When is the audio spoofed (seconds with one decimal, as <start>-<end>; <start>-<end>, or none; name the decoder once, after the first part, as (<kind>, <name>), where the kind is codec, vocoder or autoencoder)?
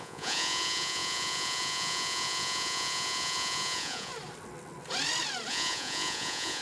0.0-4.1 (vocoder, Vocos); 5.5-6.6